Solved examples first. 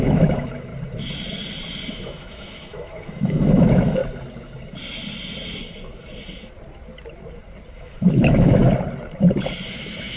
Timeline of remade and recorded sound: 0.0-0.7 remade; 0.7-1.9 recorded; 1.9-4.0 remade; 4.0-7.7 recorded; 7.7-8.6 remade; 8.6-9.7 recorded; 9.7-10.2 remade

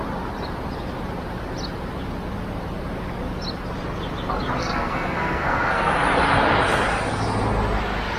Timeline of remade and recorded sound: 0.0-4.6 recorded; 4.6-5.9 remade; 5.9-8.2 recorded